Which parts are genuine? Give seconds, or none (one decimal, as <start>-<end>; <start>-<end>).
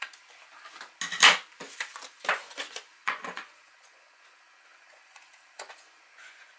0.0-2.3